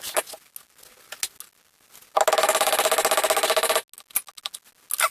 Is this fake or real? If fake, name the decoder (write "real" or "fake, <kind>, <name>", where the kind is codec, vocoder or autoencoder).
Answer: real